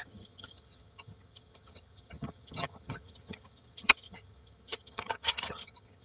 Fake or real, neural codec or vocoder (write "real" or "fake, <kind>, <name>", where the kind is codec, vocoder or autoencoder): fake, vocoder, HiFi-GAN